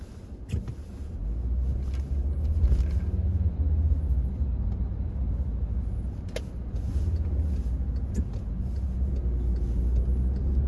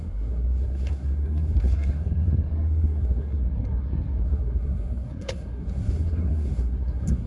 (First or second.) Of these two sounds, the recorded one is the first